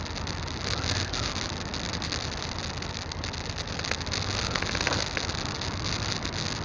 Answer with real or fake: real